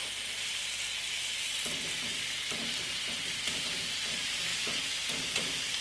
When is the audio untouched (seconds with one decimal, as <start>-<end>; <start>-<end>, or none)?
0.0-3.5